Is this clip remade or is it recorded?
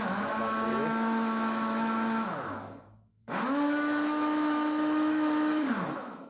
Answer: remade